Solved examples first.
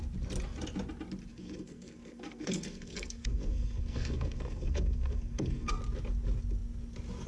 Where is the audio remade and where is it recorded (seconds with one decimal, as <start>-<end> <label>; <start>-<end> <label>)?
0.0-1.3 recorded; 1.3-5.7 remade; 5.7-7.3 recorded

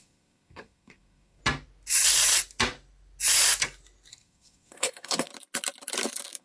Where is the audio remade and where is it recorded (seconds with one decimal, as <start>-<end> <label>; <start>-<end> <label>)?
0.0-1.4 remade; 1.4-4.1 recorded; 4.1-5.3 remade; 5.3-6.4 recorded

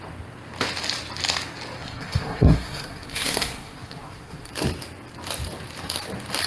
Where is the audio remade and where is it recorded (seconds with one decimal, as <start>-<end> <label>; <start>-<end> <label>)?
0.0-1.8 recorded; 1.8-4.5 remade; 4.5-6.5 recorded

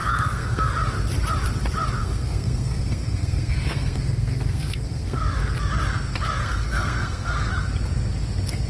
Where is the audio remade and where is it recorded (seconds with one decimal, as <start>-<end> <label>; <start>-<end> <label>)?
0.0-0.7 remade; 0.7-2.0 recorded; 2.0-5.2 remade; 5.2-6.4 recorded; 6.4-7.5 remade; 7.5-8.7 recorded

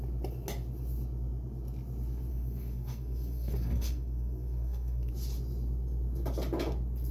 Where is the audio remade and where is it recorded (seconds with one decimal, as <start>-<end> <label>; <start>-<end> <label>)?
0.0-2.3 recorded; 2.3-5.1 remade; 5.1-7.1 recorded